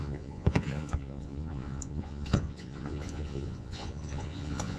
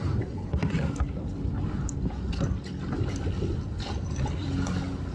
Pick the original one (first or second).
second